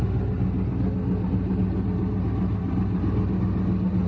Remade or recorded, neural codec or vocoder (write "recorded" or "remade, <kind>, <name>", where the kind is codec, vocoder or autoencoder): recorded